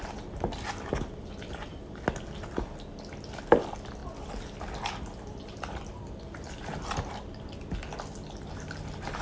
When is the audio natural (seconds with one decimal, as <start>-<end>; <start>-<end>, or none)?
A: 0.0-9.2